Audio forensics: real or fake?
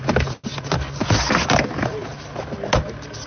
real